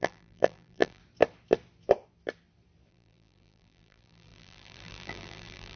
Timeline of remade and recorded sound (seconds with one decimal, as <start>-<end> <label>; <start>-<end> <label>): 0.0-1.0 remade; 1.0-2.9 recorded; 2.9-5.8 remade